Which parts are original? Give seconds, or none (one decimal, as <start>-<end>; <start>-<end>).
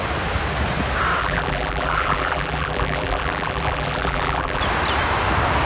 0.0-1.2; 4.6-5.7